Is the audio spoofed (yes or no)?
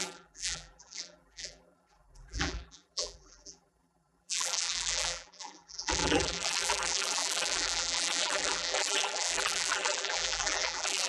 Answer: yes